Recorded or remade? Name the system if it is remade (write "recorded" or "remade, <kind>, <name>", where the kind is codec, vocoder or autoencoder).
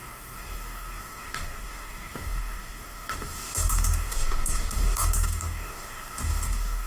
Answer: remade, codec, DAC